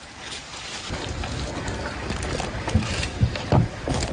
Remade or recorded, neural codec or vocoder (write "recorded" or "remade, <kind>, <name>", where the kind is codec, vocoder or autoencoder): recorded